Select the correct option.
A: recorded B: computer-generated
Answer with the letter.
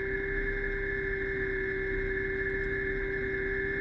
A